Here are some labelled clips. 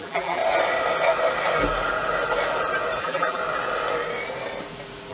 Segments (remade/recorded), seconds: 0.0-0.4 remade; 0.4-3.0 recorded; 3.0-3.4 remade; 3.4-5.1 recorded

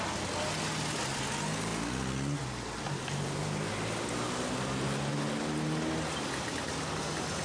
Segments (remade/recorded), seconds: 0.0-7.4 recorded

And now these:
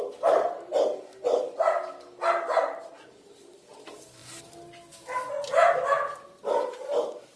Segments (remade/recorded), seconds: 0.0-7.4 recorded

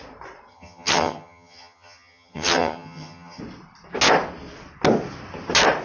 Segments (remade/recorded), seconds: 0.0-0.5 recorded; 0.5-3.4 remade; 3.4-5.8 recorded

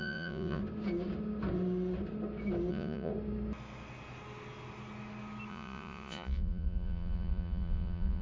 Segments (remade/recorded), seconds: 0.0-0.6 remade; 0.6-2.7 recorded; 2.7-3.1 remade; 3.1-5.5 recorded; 5.5-8.2 remade

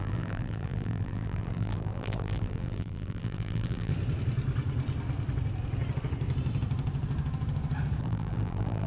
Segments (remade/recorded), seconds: 0.0-3.9 remade; 3.9-8.0 recorded; 8.0-8.9 remade

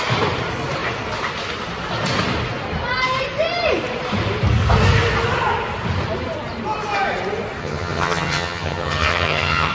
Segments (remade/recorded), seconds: 0.0-7.6 recorded; 7.6-9.7 remade

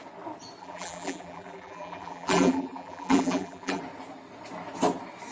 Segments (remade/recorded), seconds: 0.0-0.6 recorded; 0.6-3.8 remade; 3.8-5.3 recorded